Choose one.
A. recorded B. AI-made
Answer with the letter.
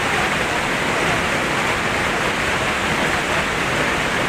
A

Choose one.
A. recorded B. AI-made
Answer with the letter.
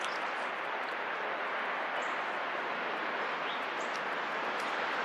A